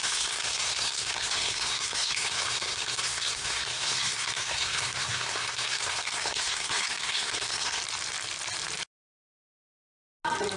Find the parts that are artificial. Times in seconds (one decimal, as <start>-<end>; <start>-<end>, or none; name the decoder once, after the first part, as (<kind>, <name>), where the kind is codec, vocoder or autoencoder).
0.0-7.8 (codec, SNAC)